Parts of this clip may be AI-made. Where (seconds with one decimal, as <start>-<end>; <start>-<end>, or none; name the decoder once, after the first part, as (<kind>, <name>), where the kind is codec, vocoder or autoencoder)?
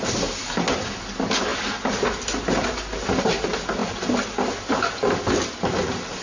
none